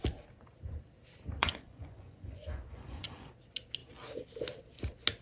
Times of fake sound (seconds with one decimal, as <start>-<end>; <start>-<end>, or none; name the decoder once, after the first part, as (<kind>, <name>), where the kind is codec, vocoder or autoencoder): 1.4-3.3 (vocoder, Vocos)